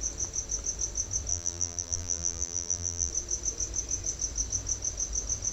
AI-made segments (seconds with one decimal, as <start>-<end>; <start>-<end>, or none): 1.3-3.1